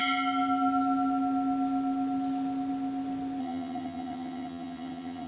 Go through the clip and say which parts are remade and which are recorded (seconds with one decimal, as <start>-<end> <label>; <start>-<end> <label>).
0.0-3.4 recorded; 3.4-5.3 remade